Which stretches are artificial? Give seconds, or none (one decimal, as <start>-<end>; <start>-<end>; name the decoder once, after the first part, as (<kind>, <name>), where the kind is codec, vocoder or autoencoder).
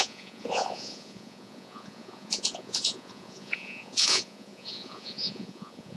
0.0-6.0 (vocoder, Vocos)